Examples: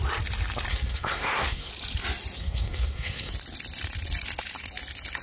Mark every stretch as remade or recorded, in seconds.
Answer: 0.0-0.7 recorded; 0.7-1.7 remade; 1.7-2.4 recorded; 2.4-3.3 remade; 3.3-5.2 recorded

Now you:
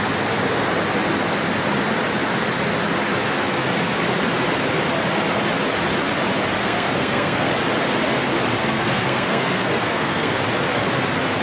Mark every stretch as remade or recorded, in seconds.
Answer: 0.0-6.6 recorded; 6.6-7.5 remade; 7.5-8.6 recorded; 8.6-10.4 remade; 10.4-11.4 recorded

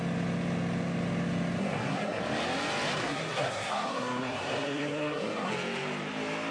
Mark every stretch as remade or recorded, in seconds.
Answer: 0.0-1.6 recorded; 1.6-2.2 remade; 2.2-3.0 recorded; 3.0-5.5 remade; 5.5-6.5 recorded

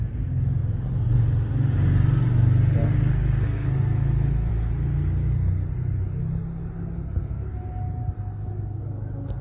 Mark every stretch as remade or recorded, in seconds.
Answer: 0.0-2.8 recorded; 2.8-4.5 remade; 4.5-9.4 recorded

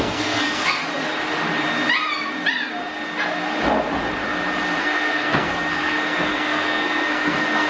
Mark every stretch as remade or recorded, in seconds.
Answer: 0.0-0.8 remade; 0.8-4.8 recorded; 4.8-7.7 remade

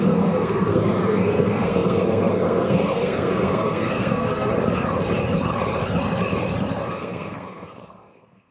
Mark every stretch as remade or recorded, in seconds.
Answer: 0.0-4.5 remade; 4.5-6.9 recorded; 6.9-8.5 remade

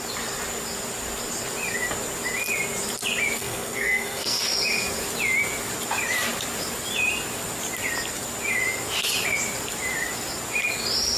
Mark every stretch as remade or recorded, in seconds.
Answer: 0.0-3.4 recorded; 3.4-4.4 remade; 4.4-11.2 recorded

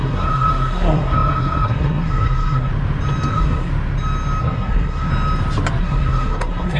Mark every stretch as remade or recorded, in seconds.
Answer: 0.0-2.7 remade; 2.7-3.3 recorded; 3.3-3.7 remade; 3.7-4.4 recorded; 4.4-5.1 remade; 5.1-5.8 recorded; 5.8-6.8 remade